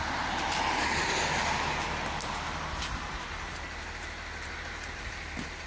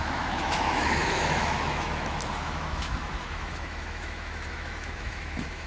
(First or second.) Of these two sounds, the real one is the first